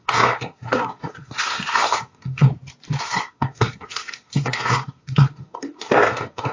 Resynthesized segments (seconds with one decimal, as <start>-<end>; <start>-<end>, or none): 0.0-2.5; 3.0-6.5